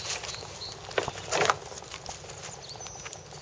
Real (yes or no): yes